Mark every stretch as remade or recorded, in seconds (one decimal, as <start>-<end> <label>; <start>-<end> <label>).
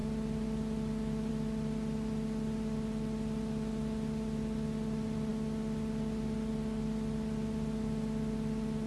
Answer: 0.0-8.9 recorded